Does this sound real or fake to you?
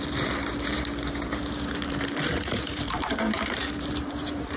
fake